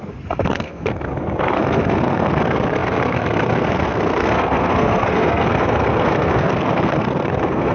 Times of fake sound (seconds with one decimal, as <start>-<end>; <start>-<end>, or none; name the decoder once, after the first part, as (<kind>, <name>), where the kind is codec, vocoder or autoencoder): 0.0-7.7 (codec, SNAC)